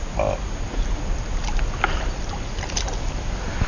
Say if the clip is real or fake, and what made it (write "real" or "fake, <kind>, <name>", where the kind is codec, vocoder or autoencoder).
real